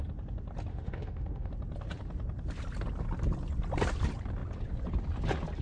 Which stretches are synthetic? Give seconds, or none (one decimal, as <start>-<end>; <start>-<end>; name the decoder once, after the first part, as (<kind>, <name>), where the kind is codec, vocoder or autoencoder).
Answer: 0.7-1.5 (autoencoder, DAC-VAE)